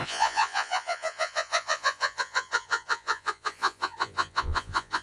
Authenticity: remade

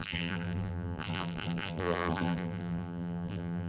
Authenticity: remade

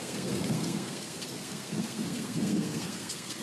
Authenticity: remade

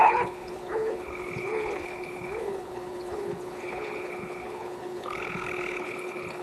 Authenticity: remade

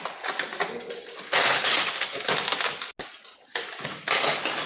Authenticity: recorded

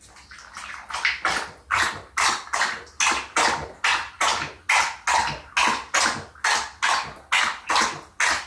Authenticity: recorded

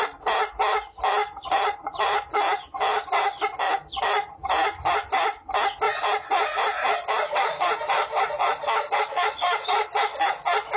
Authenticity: recorded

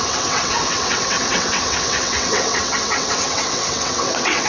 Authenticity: remade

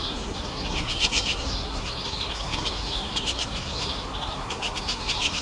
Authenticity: remade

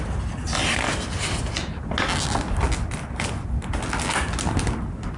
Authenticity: recorded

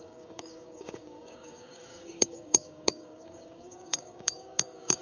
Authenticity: remade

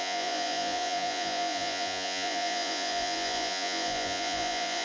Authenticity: remade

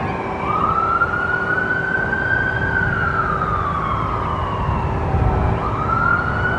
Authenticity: recorded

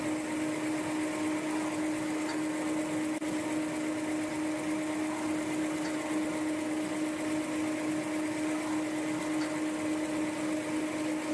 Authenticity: recorded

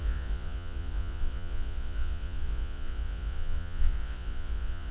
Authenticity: remade